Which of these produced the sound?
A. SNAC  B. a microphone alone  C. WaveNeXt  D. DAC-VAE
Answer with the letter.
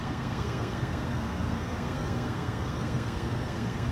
A